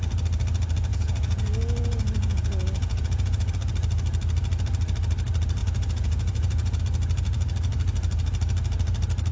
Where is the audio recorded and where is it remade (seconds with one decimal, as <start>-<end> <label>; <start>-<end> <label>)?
0.0-0.9 recorded; 0.9-3.5 remade; 3.5-5.6 recorded; 5.6-6.8 remade; 6.8-9.3 recorded